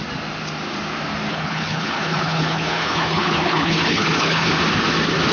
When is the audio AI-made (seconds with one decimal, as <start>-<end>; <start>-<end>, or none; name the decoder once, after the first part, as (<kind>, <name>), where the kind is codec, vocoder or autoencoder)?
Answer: 1.3-4.5 (codec, HILCodec)